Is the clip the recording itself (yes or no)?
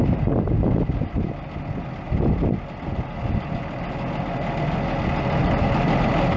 yes